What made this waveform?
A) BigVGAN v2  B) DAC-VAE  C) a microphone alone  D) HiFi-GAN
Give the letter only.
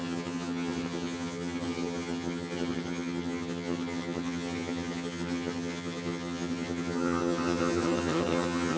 D